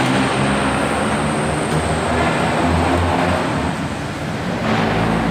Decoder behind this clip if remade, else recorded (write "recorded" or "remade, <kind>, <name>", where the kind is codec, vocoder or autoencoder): recorded